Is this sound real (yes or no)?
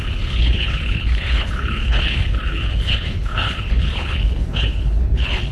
no